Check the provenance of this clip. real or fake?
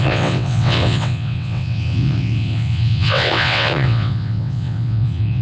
fake